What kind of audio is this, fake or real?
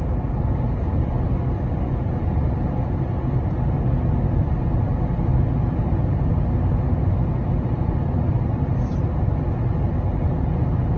real